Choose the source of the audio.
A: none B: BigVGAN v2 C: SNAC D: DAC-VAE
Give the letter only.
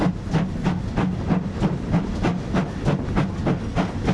A